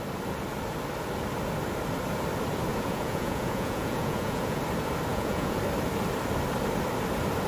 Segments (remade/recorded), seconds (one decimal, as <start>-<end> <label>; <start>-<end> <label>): 0.0-2.7 recorded; 2.7-4.6 remade; 4.6-5.1 recorded; 5.1-5.6 remade; 5.6-7.5 recorded